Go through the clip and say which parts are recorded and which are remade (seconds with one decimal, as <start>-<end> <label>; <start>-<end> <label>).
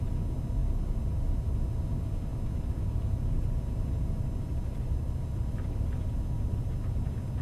0.0-7.4 recorded